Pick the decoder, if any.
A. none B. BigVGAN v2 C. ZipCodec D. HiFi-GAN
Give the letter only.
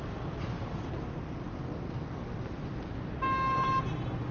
A